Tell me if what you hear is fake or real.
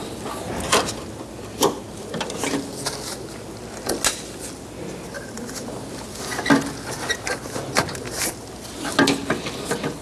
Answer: real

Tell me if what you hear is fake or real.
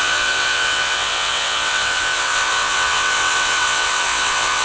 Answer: fake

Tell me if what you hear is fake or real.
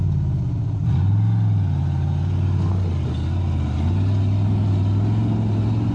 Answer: real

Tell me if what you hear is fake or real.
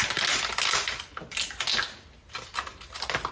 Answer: real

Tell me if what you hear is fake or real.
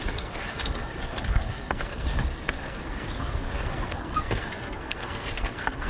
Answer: fake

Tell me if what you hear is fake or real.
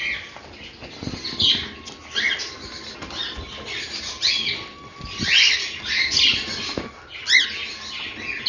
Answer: real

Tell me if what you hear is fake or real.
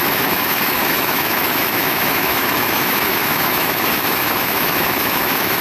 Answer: fake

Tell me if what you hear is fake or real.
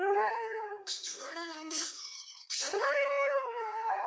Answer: fake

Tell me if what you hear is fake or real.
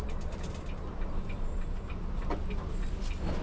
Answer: real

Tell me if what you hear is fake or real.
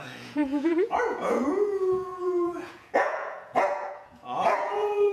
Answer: fake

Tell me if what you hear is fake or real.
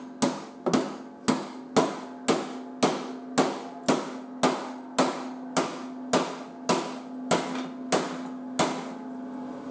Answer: real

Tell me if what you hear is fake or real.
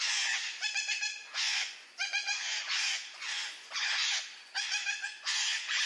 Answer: fake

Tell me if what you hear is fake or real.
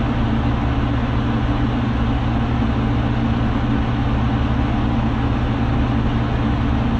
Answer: real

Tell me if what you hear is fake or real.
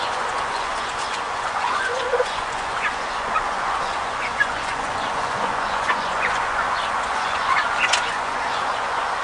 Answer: fake